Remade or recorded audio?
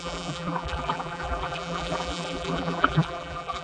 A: remade